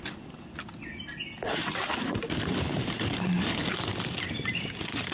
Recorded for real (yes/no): yes